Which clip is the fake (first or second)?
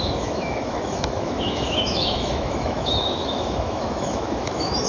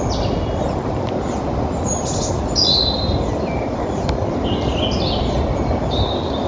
first